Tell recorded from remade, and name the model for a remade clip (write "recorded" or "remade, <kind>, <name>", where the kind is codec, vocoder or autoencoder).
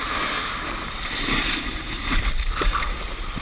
recorded